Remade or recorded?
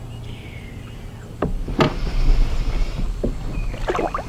recorded